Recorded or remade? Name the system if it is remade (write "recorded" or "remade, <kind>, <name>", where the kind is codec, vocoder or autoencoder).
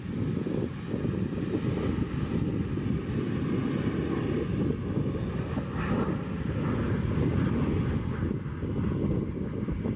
recorded